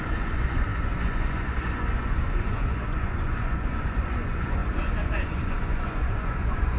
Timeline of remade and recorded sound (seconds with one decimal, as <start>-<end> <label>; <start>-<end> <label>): 0.0-6.8 remade